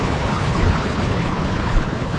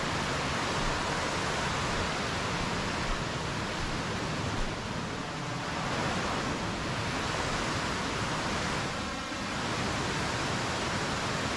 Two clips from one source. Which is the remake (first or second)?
first